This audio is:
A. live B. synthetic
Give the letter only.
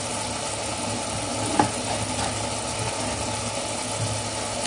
A